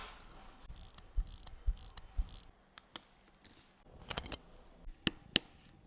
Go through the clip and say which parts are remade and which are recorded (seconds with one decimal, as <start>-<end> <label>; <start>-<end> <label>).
0.0-5.9 recorded